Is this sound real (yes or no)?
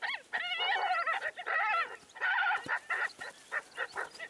yes